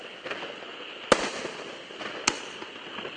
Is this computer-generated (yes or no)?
no